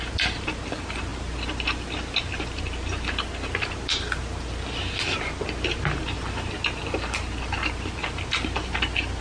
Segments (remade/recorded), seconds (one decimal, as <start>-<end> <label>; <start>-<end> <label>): 0.0-1.1 recorded; 1.1-2.6 remade; 2.6-9.2 recorded